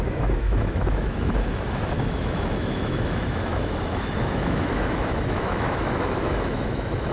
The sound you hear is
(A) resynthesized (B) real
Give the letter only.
A